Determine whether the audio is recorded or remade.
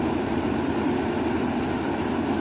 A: remade